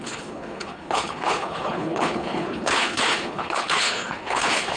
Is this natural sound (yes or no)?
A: no